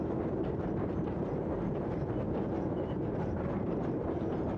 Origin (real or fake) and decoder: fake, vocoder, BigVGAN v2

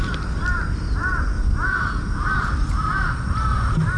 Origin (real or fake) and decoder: real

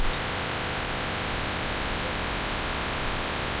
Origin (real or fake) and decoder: real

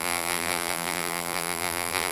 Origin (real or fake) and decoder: fake, vocoder, BigVGAN v2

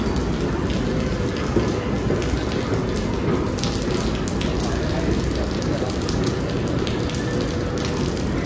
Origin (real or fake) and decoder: real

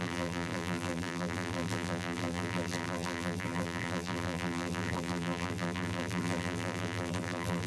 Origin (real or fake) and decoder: fake, vocoder, BigVGAN v2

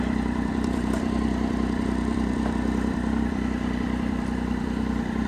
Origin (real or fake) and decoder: fake, vocoder, BigVGAN v2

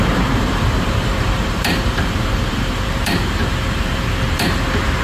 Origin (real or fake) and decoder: fake, vocoder, BigVGAN v2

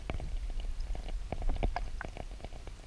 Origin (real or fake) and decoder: real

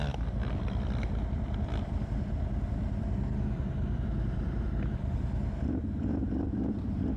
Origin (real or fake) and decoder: fake, vocoder, BigVGAN v2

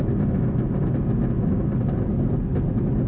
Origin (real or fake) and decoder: real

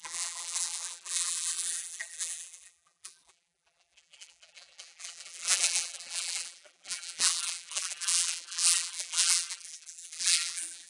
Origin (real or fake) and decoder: fake, vocoder, BigVGAN v2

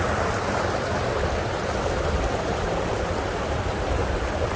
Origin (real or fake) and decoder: real